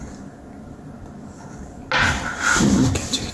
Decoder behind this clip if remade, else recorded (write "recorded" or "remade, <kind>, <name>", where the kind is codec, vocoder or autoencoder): recorded